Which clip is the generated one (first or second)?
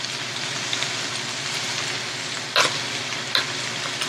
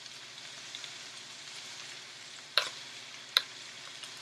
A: second